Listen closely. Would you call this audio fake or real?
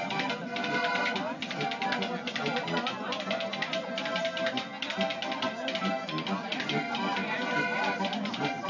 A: real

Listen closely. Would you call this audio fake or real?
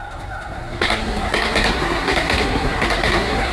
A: fake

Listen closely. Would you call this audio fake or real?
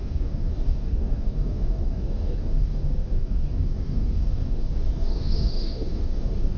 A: fake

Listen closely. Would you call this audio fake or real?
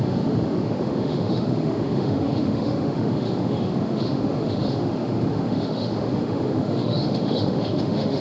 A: fake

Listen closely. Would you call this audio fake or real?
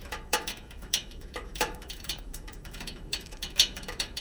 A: fake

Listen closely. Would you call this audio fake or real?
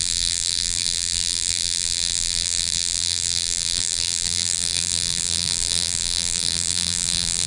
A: fake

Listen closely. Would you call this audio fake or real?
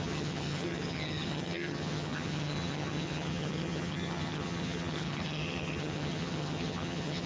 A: fake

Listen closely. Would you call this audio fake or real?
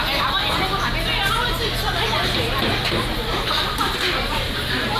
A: real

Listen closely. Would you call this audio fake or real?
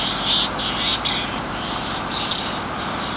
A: real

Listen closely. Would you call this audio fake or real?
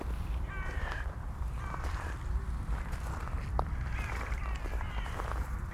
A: fake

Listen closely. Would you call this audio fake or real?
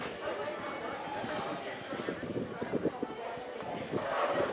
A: real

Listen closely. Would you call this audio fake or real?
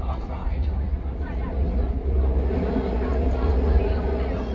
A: fake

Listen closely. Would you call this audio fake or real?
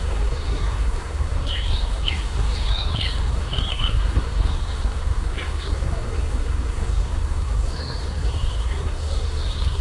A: fake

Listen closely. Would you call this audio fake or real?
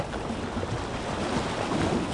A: real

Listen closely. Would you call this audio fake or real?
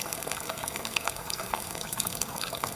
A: fake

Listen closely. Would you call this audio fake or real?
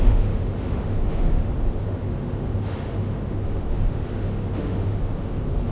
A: fake